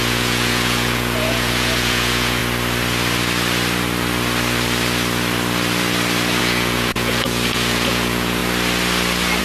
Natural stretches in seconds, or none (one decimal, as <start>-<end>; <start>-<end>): 2.4-6.4; 8.4-9.4